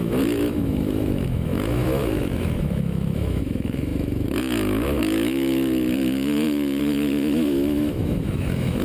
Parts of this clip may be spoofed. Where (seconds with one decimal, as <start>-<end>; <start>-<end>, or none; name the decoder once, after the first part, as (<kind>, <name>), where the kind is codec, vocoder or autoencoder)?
0.0-8.8 (autoencoder, DAC-VAE)

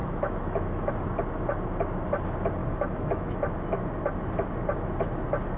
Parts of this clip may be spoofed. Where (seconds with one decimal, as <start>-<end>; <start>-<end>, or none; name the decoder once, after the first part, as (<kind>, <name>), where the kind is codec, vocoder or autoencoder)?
0.0-0.9 (autoencoder, DAC-VAE); 2.6-3.5

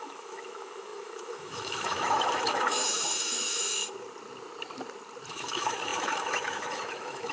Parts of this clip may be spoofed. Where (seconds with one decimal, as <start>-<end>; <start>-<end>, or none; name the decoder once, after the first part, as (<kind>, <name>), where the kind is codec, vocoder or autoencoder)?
0.0-3.8 (autoencoder, DAC-VAE); 5.3-7.3

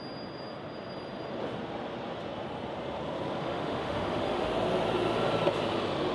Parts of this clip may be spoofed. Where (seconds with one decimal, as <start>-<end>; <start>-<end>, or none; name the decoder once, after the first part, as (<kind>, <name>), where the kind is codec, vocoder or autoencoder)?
3.4-4.5 (autoencoder, DAC-VAE)